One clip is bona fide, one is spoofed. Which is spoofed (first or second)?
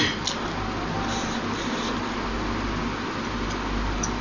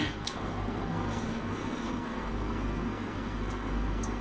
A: second